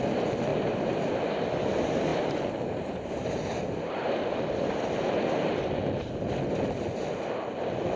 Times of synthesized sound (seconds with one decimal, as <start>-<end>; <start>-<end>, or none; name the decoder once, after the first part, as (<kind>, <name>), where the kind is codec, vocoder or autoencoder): 0.5-1.4 (vocoder, BigVGAN v2); 2.1-3.9